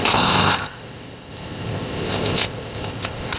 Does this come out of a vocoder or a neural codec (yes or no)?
yes